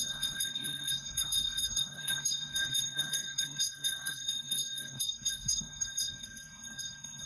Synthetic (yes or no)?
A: yes